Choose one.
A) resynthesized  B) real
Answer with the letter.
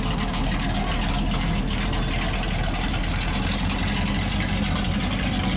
B